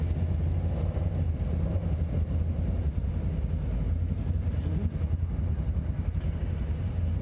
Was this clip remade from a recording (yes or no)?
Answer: no